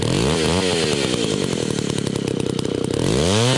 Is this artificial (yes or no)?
no